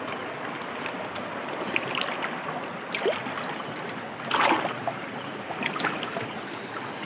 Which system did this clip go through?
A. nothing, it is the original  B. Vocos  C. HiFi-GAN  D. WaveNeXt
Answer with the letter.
A